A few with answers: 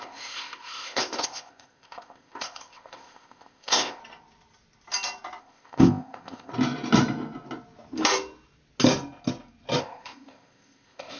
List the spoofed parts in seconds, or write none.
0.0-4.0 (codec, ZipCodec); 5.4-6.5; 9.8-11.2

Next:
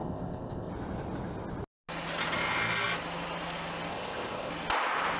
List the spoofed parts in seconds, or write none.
0.0-0.7 (codec, ZipCodec); 3.9-4.5

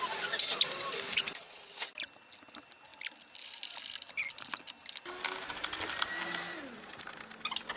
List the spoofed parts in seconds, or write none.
none

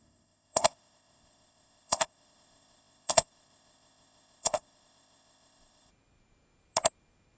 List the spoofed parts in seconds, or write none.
0.0-5.9 (codec, ZipCodec)

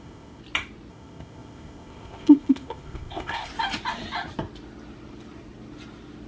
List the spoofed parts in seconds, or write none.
0.0-0.4 (codec, ZipCodec); 0.9-3.5